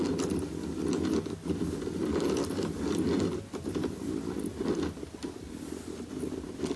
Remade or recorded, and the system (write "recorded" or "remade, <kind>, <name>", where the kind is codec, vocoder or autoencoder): recorded